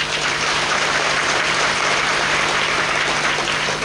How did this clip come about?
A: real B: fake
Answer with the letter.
B